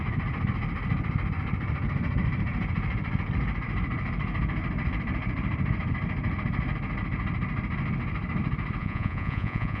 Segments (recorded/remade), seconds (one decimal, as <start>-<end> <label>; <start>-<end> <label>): 0.0-8.8 recorded; 8.8-9.8 remade